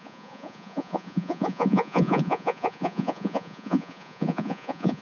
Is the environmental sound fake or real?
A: fake